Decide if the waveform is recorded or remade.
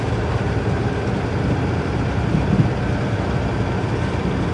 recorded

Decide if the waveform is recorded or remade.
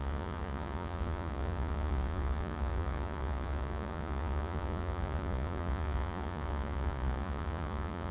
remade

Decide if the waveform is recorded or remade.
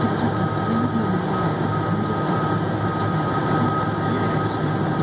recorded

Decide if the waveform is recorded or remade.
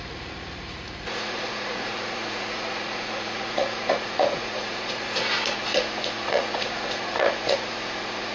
remade